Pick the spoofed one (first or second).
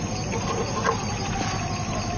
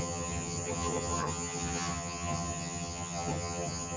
second